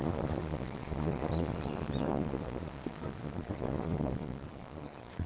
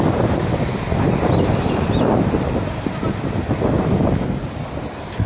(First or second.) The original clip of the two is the second